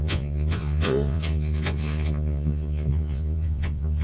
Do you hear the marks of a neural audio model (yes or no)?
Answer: yes